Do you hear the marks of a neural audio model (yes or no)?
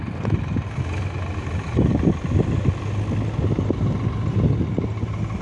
no